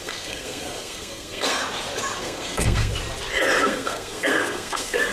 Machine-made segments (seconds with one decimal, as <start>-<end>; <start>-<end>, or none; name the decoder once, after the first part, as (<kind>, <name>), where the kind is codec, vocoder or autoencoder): 0.0-1.6 (codec, SNAC); 2.2-2.9; 3.6-5.1